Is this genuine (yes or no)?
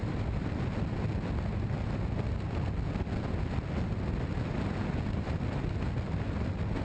yes